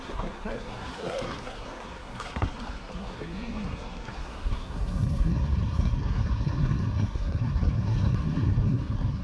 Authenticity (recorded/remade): remade